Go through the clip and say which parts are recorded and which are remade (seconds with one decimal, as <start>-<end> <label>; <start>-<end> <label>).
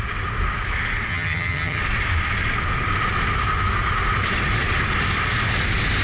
0.0-1.1 recorded; 1.1-1.8 remade; 1.8-6.0 recorded